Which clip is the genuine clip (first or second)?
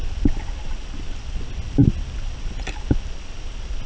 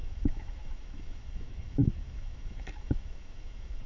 first